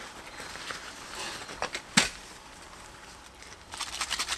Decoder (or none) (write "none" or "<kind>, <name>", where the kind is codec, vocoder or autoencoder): none